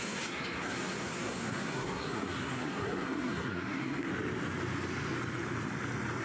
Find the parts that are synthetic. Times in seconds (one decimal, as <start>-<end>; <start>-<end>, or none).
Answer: 0.0-4.1